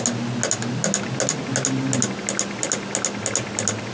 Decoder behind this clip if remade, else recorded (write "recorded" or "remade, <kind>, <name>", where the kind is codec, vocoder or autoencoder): recorded